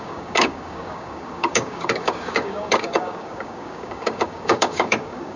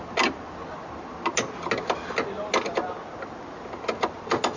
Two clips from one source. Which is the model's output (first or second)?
first